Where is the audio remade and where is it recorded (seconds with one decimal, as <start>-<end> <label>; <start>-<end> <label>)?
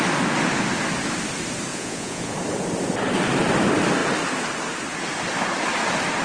0.0-1.7 recorded; 1.7-2.3 remade; 2.3-6.2 recorded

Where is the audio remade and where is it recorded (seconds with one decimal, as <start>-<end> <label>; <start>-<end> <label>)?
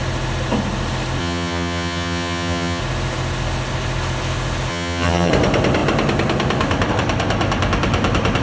0.0-1.2 recorded; 1.2-2.8 remade; 2.8-4.7 recorded; 4.7-5.3 remade; 5.3-8.4 recorded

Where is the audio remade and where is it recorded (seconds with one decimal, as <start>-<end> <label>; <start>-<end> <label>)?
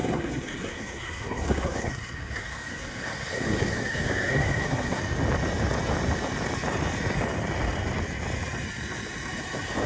0.0-5.0 remade; 5.0-9.9 recorded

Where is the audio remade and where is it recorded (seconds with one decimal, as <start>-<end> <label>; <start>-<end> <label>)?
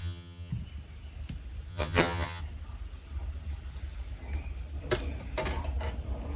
0.0-0.5 remade; 0.5-1.7 recorded; 1.7-2.4 remade; 2.4-6.4 recorded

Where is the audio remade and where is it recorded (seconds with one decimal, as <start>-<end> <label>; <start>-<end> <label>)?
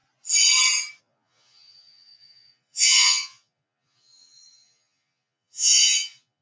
0.0-1.0 recorded; 1.0-6.4 remade